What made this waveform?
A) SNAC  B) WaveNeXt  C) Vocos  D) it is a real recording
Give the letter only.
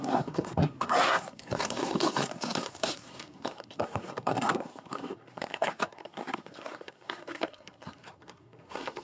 A